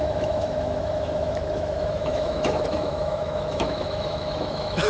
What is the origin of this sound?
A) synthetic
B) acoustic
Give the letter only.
A